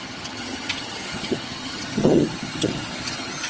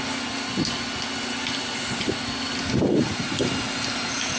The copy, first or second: first